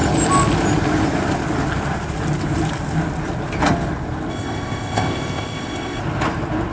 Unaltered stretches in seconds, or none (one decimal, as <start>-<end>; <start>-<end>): 0.0-4.3; 6.0-6.7